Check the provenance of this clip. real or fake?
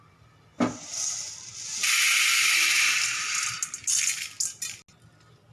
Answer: real